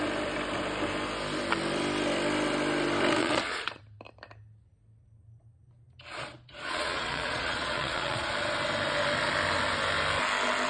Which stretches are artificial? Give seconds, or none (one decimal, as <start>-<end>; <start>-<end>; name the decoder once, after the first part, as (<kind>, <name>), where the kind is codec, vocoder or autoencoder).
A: 3.2-3.8 (vocoder, Vocos); 6.1-8.3